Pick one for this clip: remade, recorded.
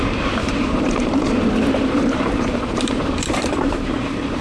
remade